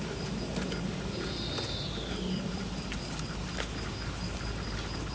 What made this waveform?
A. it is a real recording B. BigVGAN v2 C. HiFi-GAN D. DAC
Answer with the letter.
A